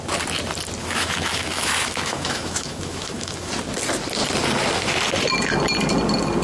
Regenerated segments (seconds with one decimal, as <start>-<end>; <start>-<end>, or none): 0.8-3.5